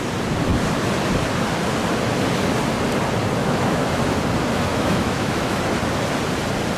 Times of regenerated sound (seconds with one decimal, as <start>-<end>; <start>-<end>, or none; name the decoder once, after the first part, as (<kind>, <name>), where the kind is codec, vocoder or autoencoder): 3.4-4.0 (autoencoder, DAC-VAE); 4.7-5.6